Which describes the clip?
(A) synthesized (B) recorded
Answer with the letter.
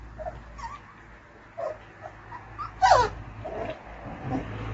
B